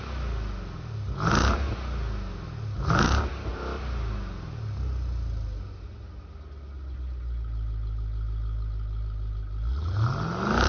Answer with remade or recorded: recorded